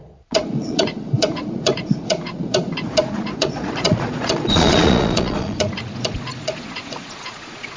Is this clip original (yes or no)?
no